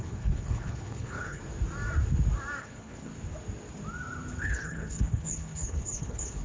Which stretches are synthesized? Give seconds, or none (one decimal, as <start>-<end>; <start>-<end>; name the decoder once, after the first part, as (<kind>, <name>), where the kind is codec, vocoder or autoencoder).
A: 0.0-1.4 (codec, HILCodec); 2.6-3.1; 4.4-6.4